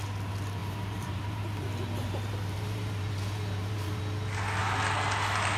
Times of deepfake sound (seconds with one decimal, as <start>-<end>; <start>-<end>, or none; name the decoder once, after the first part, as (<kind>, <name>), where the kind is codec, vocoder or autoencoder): 0.6-4.0 (vocoder, BigVGAN v2)